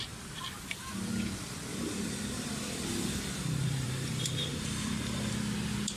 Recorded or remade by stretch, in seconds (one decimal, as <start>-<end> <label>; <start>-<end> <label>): 0.0-1.7 recorded; 1.7-5.3 remade; 5.3-6.0 recorded